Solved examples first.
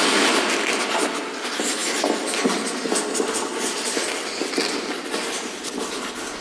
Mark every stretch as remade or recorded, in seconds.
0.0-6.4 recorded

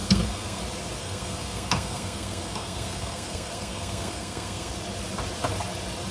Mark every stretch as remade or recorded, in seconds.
0.0-0.6 remade; 0.6-1.0 recorded; 1.0-4.7 remade; 4.7-6.1 recorded

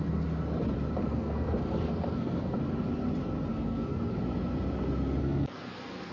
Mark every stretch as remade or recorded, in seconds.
0.0-1.1 recorded; 1.1-2.6 remade; 2.6-3.5 recorded; 3.5-4.2 remade; 4.2-5.2 recorded; 5.2-6.1 remade

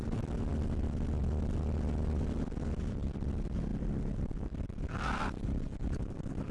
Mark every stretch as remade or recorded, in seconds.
0.0-6.5 recorded

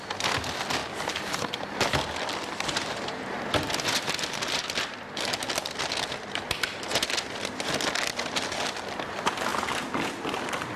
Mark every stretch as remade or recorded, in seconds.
0.0-10.8 recorded

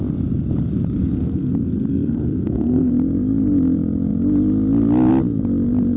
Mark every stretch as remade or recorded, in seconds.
0.0-1.0 recorded; 1.0-1.5 remade; 1.5-1.9 recorded; 1.9-2.9 remade; 2.9-6.0 recorded

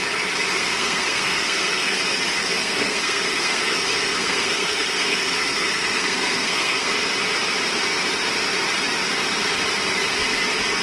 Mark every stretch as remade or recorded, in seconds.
0.0-0.6 recorded; 0.6-2.0 remade; 2.0-2.4 recorded; 2.4-6.9 remade; 6.9-10.8 recorded